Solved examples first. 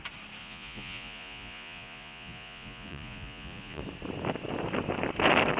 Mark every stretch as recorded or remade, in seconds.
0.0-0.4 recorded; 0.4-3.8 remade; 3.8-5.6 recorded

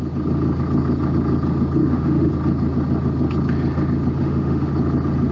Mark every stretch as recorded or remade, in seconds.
0.0-1.8 recorded; 1.8-2.3 remade; 2.3-4.2 recorded; 4.2-4.7 remade; 4.7-5.3 recorded

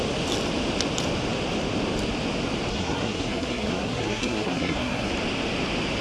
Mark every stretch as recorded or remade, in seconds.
0.0-2.7 recorded; 2.7-5.1 remade; 5.1-6.0 recorded

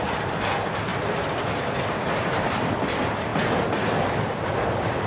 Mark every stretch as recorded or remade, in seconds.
0.0-5.1 recorded

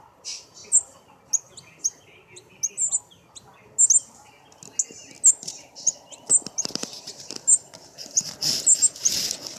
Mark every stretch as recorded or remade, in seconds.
0.0-9.6 recorded

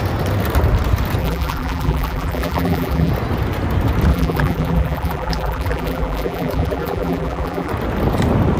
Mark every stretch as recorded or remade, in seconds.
0.0-1.2 recorded; 1.2-3.1 remade; 3.1-4.1 recorded; 4.1-7.7 remade; 7.7-8.6 recorded

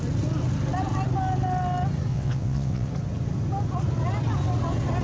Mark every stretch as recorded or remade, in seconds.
0.0-2.1 recorded; 2.1-2.9 remade; 2.9-5.0 recorded

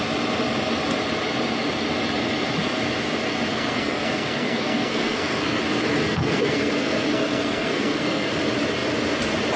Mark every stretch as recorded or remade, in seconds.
0.0-3.5 recorded; 3.5-5.6 remade; 5.6-6.0 recorded; 6.0-8.3 remade; 8.3-9.6 recorded